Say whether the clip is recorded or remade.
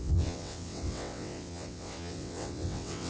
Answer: remade